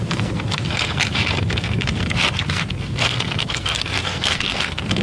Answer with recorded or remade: remade